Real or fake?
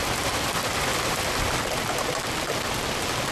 real